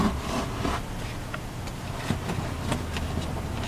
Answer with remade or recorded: recorded